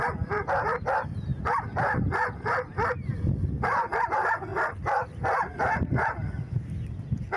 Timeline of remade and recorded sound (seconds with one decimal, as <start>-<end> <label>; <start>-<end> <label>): 0.0-7.4 recorded